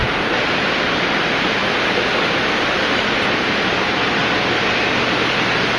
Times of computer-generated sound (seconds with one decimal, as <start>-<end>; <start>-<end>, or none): 2.7-4.2; 5.3-5.8